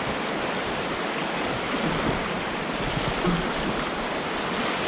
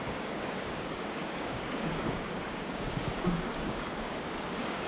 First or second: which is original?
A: first